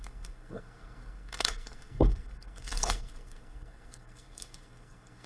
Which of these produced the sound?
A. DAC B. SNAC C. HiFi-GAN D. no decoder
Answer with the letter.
B